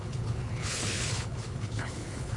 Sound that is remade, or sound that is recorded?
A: remade